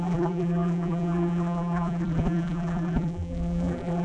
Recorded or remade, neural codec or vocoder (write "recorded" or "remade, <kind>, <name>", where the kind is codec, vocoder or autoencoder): remade, vocoder, BigVGAN v2